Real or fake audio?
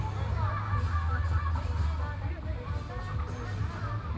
real